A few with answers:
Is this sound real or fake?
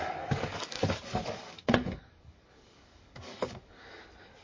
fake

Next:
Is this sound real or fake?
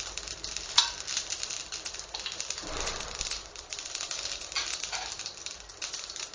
fake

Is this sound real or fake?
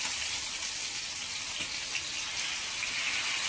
real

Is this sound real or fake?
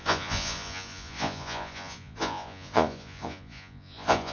fake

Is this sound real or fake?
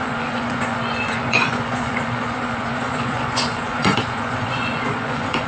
fake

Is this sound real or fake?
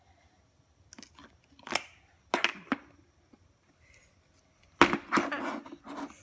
real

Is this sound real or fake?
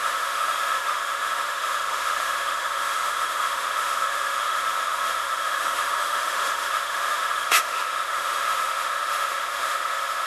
fake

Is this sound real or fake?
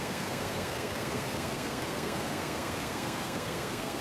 fake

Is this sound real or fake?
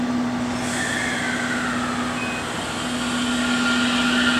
real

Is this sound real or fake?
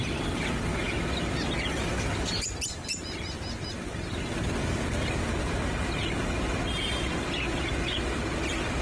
real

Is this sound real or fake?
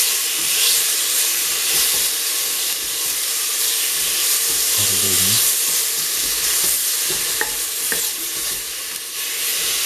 fake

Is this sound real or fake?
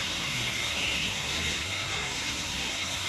fake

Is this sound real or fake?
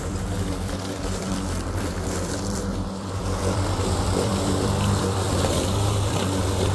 fake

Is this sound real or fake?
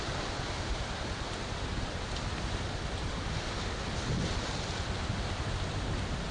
real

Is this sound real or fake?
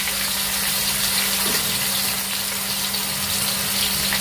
real